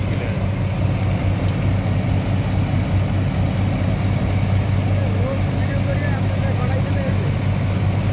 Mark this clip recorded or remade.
recorded